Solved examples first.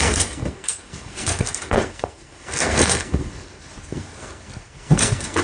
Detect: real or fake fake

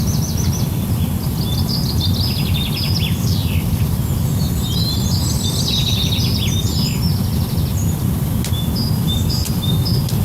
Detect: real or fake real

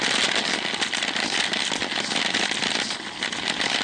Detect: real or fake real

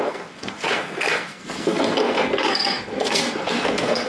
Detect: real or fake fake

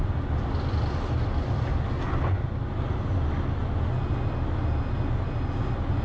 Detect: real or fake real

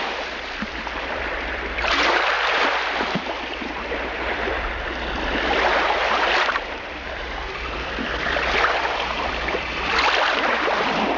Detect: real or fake fake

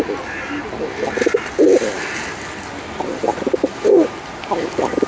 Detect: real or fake real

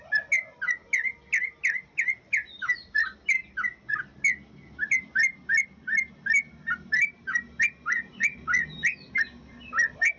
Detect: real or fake real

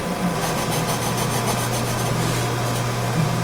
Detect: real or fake real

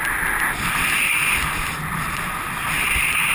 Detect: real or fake real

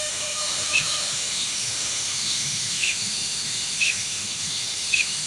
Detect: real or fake fake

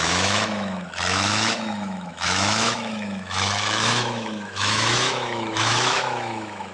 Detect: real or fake fake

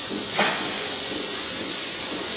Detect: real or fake fake